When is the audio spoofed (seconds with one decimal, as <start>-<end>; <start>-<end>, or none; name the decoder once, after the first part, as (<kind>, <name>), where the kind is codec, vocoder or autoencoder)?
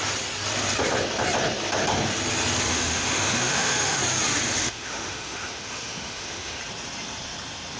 2.7-4.0 (autoencoder, DAC-VAE); 4.6-6.6